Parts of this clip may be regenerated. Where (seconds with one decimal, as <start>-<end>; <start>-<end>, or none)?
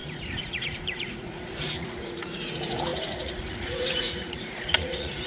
0.0-5.3